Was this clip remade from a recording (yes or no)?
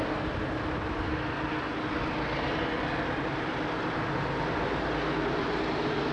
no